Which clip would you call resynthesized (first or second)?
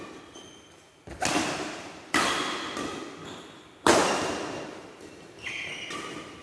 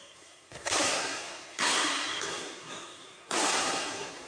second